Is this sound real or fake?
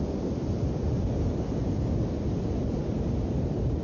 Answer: real